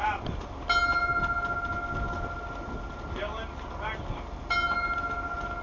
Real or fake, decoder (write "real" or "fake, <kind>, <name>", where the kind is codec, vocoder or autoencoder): real